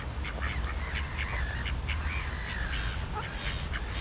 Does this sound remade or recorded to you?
recorded